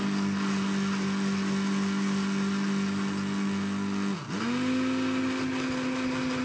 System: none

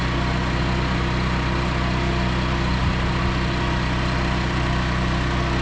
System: none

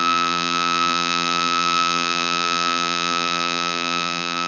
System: vocoder, BigVGAN v2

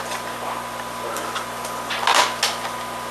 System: none